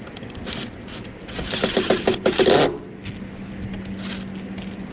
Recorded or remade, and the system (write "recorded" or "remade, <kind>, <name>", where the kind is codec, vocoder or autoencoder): recorded